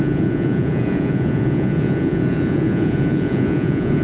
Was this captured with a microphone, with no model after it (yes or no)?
no